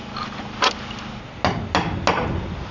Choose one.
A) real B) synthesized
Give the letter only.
A